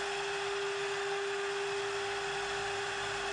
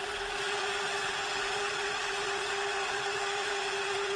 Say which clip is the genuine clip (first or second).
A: first